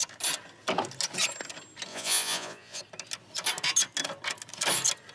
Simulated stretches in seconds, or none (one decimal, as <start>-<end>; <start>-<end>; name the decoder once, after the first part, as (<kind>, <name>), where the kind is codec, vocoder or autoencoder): 1.9-2.8 (vocoder, Vocos)